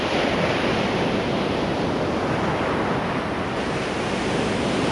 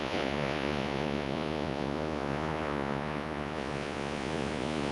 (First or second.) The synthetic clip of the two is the second